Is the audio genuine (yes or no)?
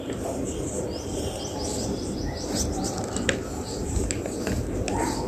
no